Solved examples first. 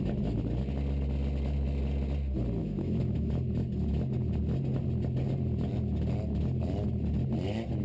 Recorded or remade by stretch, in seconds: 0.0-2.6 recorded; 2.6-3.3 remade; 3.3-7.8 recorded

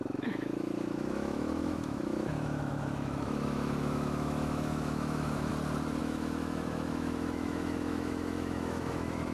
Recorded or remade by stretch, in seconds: 0.0-5.5 remade; 5.5-6.0 recorded; 6.0-9.3 remade

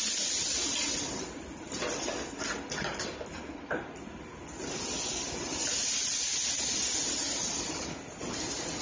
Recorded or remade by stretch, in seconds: 0.0-8.8 recorded

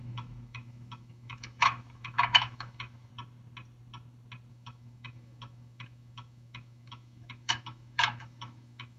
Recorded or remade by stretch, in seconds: 0.0-3.1 remade; 3.1-4.5 recorded; 4.5-9.0 remade

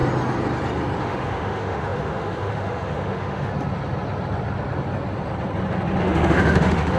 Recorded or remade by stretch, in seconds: 0.0-1.0 recorded; 1.0-3.5 remade; 3.5-6.0 recorded; 6.0-7.0 remade

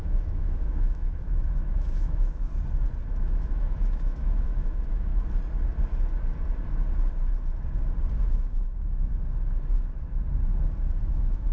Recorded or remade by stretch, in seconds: 0.0-2.5 remade; 2.5-3.1 recorded; 3.1-5.1 remade; 5.1-8.2 recorded; 8.2-9.1 remade; 9.1-11.0 recorded; 11.0-11.5 remade